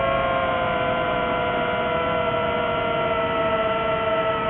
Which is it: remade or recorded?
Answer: recorded